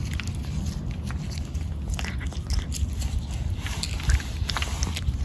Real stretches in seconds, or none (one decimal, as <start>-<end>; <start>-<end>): 0.0-5.2